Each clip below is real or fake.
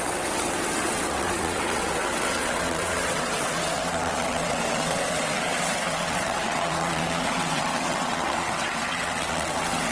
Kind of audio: fake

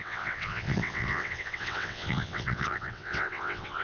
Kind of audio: fake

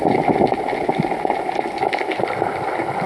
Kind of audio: real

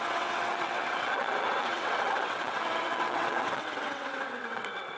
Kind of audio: fake